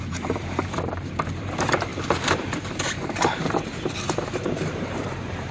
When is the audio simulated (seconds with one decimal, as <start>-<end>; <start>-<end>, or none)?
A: 0.0-5.5